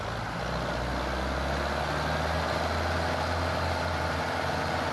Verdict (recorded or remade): recorded